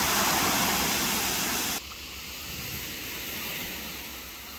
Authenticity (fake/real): real